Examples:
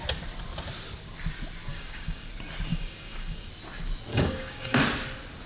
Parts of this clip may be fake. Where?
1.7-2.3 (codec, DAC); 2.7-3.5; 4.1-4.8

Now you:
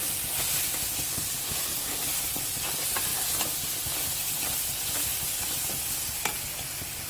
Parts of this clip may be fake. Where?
0.0-0.6 (vocoder, BigVGAN v2); 1.7-2.4; 3.1-4.5

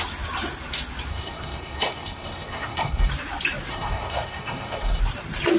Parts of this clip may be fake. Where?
1.1-3.1 (codec, SNAC); 3.7-5.0

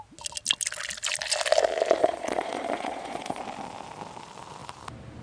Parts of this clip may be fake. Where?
2.0-3.4 (vocoder, Vocos)